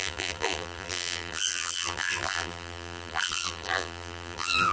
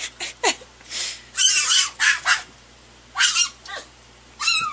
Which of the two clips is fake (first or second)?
first